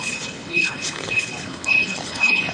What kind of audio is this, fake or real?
fake